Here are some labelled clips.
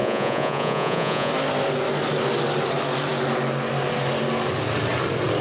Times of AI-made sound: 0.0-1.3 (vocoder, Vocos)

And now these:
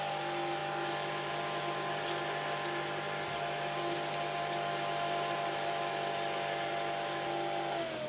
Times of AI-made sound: 0.6-1.6 (vocoder, BigVGAN v2)